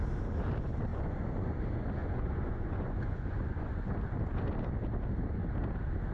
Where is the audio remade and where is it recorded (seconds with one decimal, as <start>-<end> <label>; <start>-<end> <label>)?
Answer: 0.0-0.9 recorded; 0.9-1.6 remade; 1.6-2.0 recorded; 2.0-3.9 remade; 3.9-6.1 recorded